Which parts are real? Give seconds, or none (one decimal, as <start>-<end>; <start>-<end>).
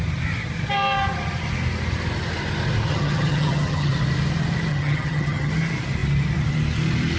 0.0-2.9; 3.9-4.7; 5.5-7.2